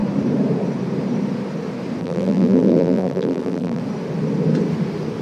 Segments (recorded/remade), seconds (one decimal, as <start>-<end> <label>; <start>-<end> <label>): 0.0-2.0 recorded; 2.0-3.8 remade; 3.8-5.2 recorded